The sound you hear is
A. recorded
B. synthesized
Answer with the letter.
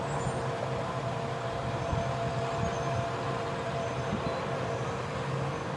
A